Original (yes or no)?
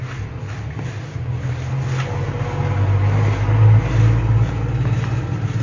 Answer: yes